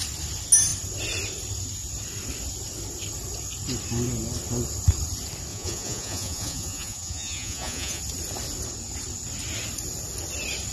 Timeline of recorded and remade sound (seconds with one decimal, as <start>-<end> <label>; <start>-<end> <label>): 0.0-5.5 recorded; 5.5-8.0 remade; 8.0-10.7 recorded